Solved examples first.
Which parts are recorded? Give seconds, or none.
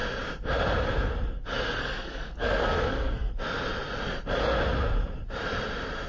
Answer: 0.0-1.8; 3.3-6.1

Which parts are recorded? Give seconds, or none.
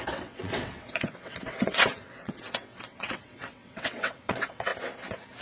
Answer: 4.7-5.4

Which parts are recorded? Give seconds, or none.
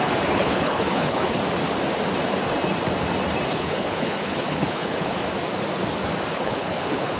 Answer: 1.4-3.5; 5.2-6.3